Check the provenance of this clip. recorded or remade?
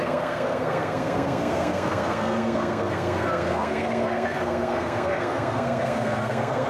remade